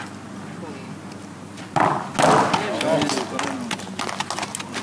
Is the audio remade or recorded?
recorded